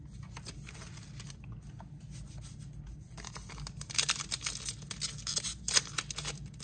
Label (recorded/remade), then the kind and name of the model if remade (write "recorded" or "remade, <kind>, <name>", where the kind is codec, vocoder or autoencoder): recorded